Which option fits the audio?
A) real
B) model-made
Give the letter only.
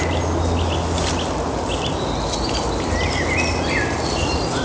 A